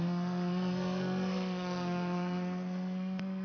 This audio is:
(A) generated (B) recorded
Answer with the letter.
A